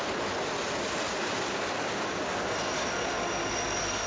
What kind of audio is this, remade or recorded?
recorded